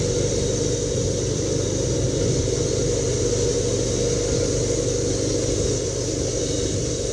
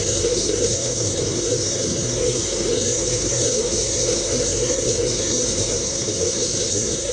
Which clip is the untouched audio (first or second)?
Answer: first